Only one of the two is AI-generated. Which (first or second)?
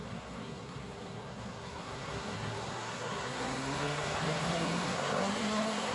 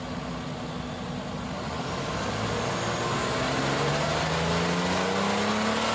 first